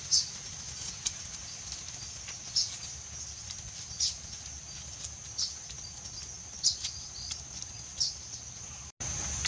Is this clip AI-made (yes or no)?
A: no